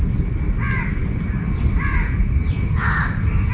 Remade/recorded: recorded